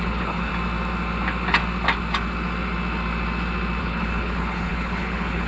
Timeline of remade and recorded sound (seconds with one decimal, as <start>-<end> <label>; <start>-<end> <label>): 0.0-0.5 remade; 0.5-3.8 recorded; 3.8-5.5 remade